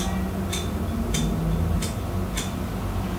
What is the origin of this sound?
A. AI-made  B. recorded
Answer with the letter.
B